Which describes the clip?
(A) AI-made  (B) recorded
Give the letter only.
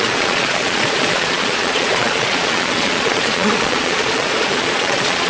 A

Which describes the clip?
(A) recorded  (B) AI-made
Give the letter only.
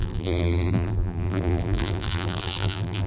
B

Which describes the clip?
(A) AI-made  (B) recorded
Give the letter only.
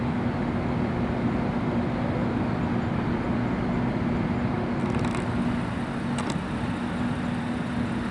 B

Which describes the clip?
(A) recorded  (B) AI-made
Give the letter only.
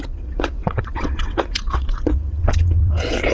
B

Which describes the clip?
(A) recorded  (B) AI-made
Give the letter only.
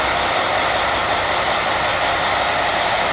B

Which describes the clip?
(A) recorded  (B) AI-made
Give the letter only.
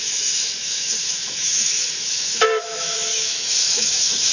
B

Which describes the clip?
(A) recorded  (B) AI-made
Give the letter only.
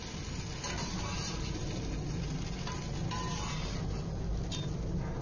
A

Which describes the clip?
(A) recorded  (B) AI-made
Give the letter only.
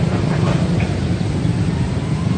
B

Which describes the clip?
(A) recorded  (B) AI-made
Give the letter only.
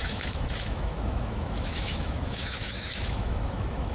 B